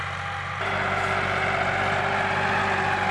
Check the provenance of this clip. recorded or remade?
recorded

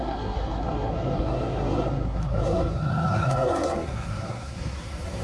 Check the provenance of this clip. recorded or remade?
remade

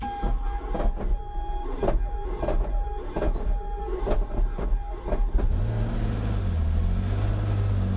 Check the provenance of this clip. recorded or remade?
recorded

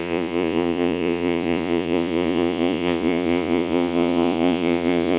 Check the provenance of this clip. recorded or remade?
remade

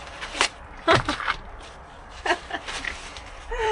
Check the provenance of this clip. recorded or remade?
remade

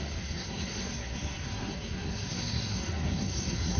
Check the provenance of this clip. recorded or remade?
remade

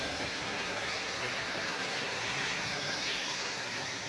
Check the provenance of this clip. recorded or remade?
remade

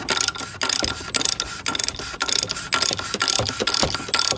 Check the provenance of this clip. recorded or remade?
recorded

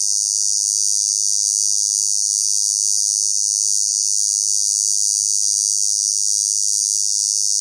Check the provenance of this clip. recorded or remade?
recorded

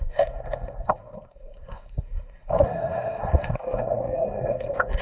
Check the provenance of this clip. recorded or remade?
remade